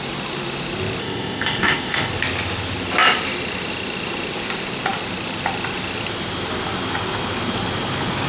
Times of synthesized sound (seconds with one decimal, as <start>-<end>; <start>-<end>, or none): 1.0-2.1

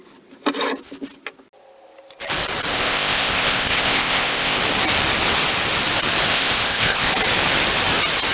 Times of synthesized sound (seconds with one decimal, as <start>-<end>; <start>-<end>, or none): 2.7-4.6; 6.3-7.1

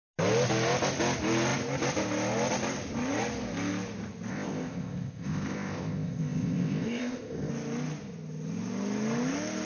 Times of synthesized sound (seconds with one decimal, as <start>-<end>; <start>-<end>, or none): 4.3-7.5

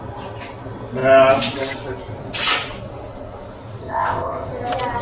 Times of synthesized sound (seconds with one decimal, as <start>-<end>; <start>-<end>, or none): 3.8-4.5

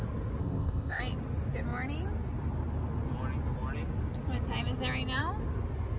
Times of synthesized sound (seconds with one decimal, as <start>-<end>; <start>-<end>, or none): 0.4-1.0

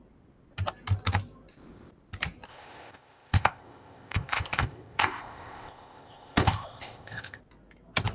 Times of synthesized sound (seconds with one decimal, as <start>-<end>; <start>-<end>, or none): 2.5-7.4

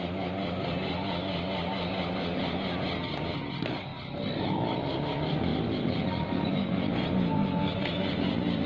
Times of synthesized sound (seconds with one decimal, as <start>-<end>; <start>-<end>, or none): none